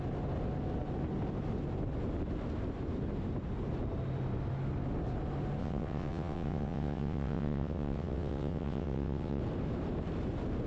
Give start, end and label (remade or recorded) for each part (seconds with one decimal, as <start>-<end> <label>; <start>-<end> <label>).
0.0-5.6 recorded; 5.6-9.4 remade; 9.4-10.7 recorded